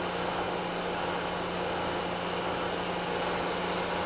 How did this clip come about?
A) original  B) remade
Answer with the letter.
A